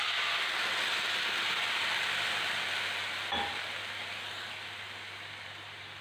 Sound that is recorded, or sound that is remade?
recorded